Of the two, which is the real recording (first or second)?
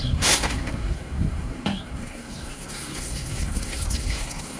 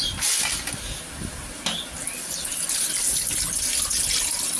second